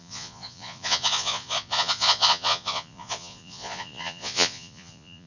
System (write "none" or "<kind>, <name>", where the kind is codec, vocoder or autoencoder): vocoder, Vocos